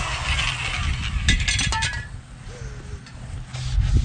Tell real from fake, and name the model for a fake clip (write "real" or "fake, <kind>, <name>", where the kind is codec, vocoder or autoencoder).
real